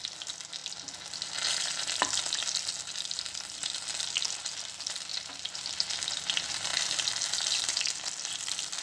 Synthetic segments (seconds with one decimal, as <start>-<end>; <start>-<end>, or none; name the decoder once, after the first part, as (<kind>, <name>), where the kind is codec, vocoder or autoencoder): none